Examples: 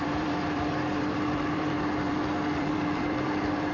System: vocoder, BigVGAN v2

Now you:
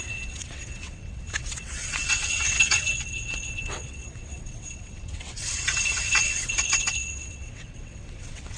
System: vocoder, WaveNeXt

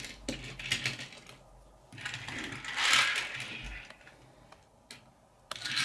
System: none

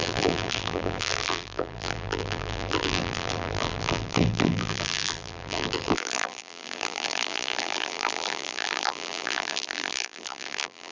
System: vocoder, BigVGAN v2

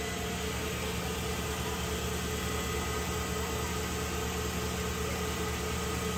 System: none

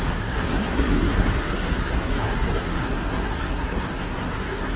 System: codec, SNAC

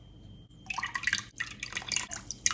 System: none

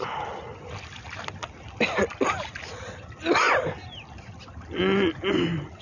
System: none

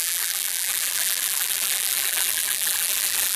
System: vocoder, BigVGAN v2